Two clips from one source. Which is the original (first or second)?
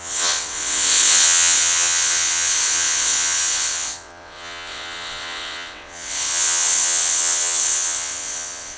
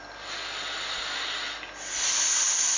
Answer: second